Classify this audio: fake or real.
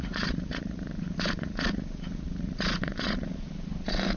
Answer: fake